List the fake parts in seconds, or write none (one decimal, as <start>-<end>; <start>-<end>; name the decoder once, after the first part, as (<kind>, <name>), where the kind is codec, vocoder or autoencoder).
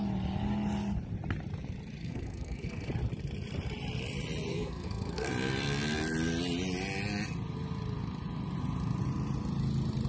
2.0-2.9 (codec, SNAC); 4.5-5.3